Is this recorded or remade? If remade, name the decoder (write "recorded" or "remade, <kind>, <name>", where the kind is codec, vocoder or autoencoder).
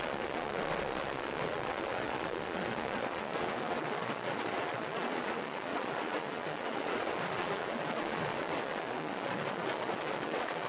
remade, vocoder, Vocos